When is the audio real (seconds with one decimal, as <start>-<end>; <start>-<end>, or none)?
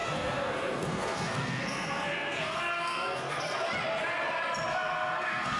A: 3.4-4.7